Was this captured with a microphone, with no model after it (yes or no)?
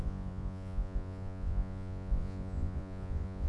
no